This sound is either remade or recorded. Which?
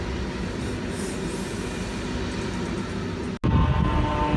recorded